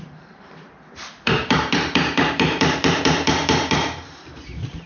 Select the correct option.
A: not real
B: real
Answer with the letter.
A